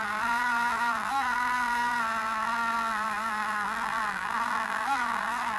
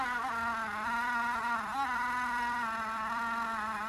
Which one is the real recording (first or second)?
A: second